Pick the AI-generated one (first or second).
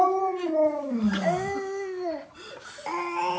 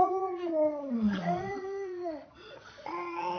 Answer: second